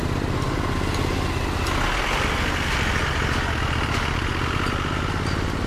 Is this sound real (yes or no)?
yes